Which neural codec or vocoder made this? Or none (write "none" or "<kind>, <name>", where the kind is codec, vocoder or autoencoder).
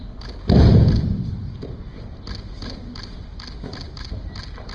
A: none